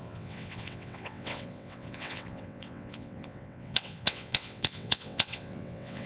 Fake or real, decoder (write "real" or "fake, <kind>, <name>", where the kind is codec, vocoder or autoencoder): fake, vocoder, WaveNeXt